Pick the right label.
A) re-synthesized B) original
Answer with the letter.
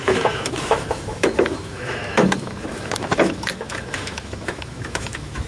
A